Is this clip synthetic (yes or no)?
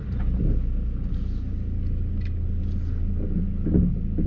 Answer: no